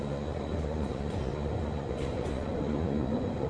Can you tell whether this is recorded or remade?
remade